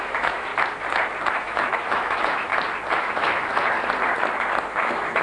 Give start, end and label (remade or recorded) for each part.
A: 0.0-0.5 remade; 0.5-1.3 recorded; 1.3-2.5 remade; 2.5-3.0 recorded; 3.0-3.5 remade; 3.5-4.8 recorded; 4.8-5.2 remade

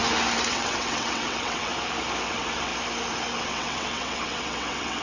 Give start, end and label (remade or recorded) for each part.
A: 0.0-0.5 recorded; 0.5-1.7 remade; 1.7-2.3 recorded; 2.3-2.7 remade; 2.7-3.4 recorded; 3.4-5.0 remade

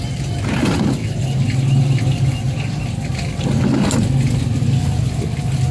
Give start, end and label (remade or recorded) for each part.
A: 0.0-5.7 recorded

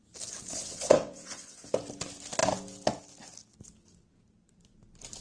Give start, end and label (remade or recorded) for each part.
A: 0.0-0.5 recorded; 0.5-1.7 remade; 1.7-5.2 recorded

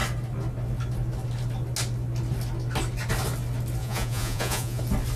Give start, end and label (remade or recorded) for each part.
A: 0.0-3.8 recorded; 3.8-4.8 remade; 4.8-5.2 recorded

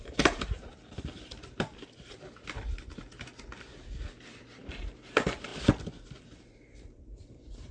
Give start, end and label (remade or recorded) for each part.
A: 0.0-1.7 remade; 1.7-4.6 recorded; 4.6-5.5 remade; 5.5-6.2 recorded; 6.2-7.7 remade

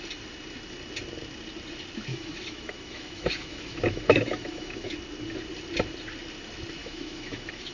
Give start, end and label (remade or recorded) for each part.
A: 0.0-2.1 recorded; 2.1-4.9 remade; 4.9-6.8 recorded; 6.8-7.7 remade